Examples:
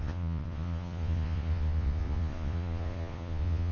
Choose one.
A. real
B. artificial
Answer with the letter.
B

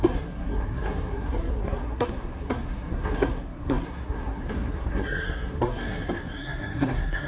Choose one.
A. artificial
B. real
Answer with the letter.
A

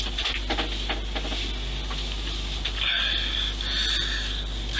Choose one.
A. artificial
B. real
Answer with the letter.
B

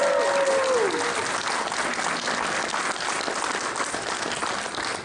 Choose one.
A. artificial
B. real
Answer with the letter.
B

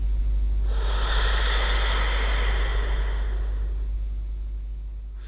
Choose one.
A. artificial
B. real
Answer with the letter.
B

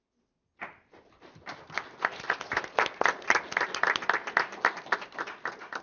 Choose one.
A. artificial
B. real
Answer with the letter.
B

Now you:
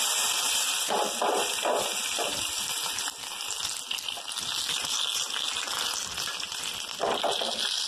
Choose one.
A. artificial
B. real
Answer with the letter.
B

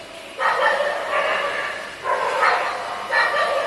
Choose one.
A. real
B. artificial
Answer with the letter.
A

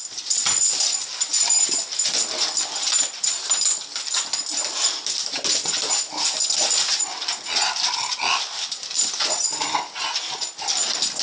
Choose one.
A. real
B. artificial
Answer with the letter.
A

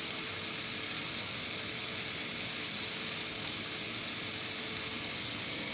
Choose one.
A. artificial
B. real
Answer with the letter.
B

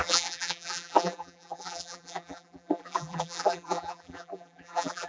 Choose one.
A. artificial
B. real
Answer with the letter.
A